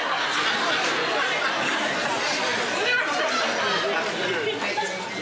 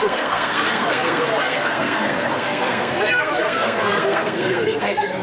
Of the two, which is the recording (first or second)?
first